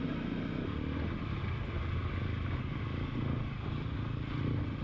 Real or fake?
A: real